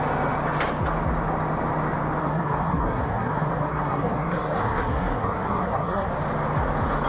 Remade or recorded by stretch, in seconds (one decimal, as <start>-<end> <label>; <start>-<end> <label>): 0.0-2.2 recorded; 2.2-6.1 remade; 6.1-7.1 recorded